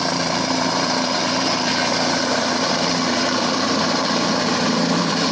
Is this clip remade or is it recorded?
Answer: remade